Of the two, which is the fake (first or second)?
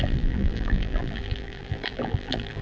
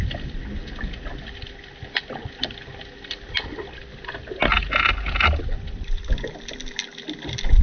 first